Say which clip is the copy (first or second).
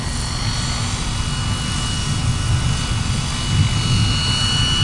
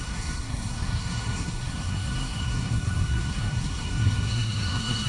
second